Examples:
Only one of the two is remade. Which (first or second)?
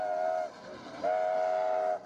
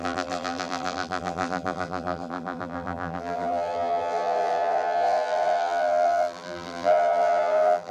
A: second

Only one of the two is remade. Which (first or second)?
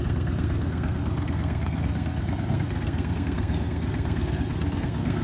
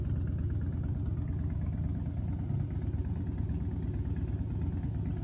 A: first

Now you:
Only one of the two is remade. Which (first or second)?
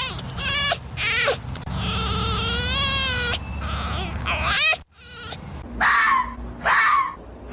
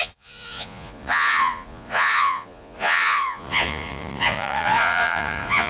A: second